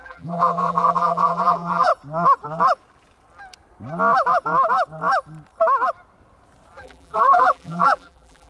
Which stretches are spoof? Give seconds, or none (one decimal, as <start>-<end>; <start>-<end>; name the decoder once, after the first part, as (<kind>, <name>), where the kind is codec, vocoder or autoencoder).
0.0-1.9 (vocoder, BigVGAN v2); 6.8-8.5